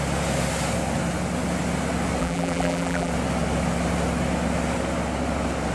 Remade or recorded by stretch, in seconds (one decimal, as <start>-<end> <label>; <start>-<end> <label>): 0.0-2.2 recorded; 2.2-3.1 remade; 3.1-5.7 recorded